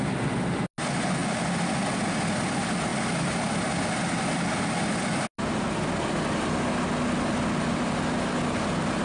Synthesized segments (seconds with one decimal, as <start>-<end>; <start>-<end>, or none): none